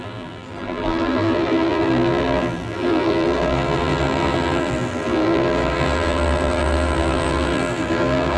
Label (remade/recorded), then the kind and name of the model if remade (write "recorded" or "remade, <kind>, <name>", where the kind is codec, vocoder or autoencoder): remade, vocoder, BigVGAN v2